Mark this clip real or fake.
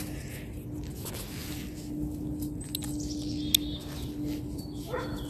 real